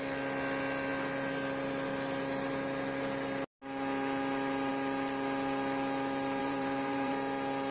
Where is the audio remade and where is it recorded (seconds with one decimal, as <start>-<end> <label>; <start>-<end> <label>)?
0.0-6.4 recorded; 6.4-7.1 remade; 7.1-7.7 recorded